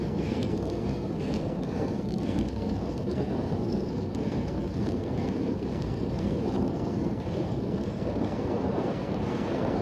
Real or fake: fake